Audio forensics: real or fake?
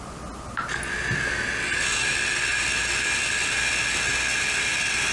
real